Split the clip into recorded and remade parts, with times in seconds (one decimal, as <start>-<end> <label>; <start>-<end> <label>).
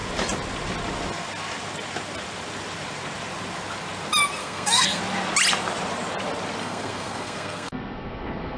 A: 0.0-4.4 recorded; 4.4-5.0 remade; 5.0-6.6 recorded; 6.6-8.6 remade